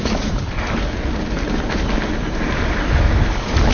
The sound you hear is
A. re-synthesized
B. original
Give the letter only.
B